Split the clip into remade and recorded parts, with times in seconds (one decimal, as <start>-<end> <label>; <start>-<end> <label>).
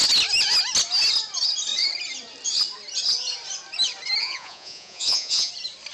0.0-4.2 recorded; 4.2-5.5 remade; 5.5-5.9 recorded